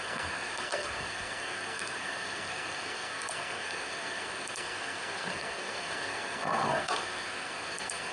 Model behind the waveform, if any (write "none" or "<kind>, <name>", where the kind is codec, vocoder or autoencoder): codec, SNAC